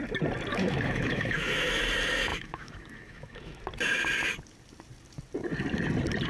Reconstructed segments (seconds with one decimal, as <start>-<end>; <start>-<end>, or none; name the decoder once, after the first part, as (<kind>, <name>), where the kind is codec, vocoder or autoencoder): 0.5-1.8 (autoencoder, DAC-VAE); 2.3-3.6